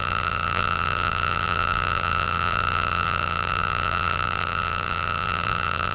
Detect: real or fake fake